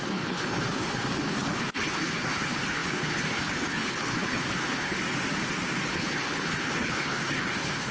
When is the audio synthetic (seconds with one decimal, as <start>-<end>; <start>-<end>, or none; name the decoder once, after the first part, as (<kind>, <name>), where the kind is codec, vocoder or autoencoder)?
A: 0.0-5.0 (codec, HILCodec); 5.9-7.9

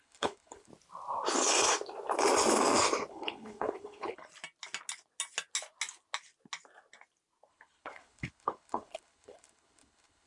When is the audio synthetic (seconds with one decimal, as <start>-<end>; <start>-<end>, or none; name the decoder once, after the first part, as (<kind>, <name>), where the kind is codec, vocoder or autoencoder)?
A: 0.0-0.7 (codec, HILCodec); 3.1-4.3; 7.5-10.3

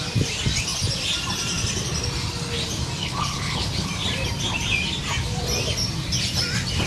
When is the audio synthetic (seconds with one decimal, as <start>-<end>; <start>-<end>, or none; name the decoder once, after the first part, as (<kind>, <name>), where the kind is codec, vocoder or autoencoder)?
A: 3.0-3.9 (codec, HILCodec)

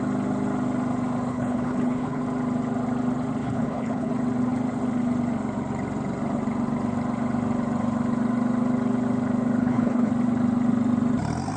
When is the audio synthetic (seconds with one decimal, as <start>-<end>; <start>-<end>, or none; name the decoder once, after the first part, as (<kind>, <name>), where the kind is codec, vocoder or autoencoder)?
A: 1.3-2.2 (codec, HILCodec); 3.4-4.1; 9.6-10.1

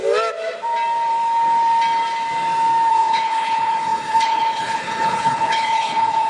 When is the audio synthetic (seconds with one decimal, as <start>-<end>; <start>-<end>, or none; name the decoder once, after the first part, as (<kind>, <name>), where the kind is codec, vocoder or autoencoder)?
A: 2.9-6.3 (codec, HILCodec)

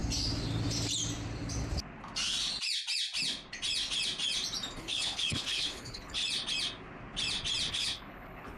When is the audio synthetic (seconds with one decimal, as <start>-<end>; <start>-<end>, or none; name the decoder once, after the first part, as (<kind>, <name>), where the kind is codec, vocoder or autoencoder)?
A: 4.8-6.2 (codec, HILCodec); 7.7-8.6